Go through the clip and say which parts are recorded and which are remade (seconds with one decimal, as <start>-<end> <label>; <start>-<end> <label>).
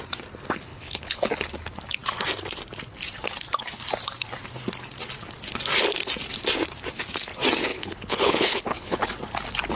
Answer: 0.0-0.7 recorded; 0.7-1.3 remade; 1.3-7.7 recorded; 7.7-9.0 remade; 9.0-9.8 recorded